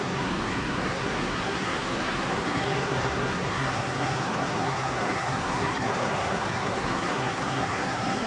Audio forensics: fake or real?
fake